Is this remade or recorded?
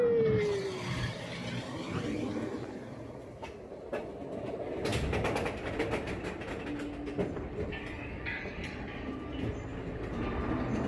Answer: recorded